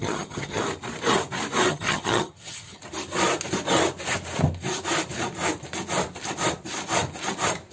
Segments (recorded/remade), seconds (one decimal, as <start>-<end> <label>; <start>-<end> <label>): 0.0-0.6 remade; 0.6-1.7 recorded; 1.7-2.8 remade; 2.8-7.7 recorded